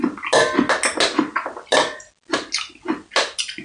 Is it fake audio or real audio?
real